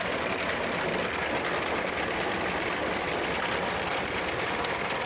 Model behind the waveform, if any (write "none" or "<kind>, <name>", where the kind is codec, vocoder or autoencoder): none